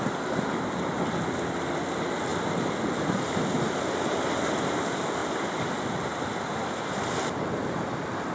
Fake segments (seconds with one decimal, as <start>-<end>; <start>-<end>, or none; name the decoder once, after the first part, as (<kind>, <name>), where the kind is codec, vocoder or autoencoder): none